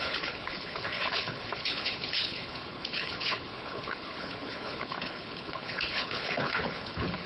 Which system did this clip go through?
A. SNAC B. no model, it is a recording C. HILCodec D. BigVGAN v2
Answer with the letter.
C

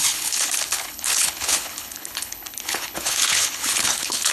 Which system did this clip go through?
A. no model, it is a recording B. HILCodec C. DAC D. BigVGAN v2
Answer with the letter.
B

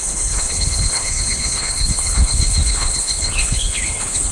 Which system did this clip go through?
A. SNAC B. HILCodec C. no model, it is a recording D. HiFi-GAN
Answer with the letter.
B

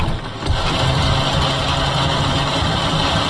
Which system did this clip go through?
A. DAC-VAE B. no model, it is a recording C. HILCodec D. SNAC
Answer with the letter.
B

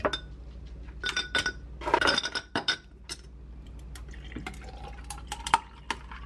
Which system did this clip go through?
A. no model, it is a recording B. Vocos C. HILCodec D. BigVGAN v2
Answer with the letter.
A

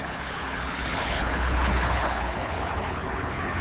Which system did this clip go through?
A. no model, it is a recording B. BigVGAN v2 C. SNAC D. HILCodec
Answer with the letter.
D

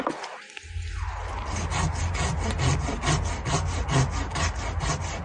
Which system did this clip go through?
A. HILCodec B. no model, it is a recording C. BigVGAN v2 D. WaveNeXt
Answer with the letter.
B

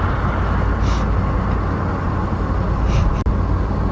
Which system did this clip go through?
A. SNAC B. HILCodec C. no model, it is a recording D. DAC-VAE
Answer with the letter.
C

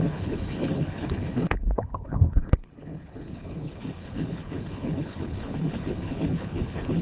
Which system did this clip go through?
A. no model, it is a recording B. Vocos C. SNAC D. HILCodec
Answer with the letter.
D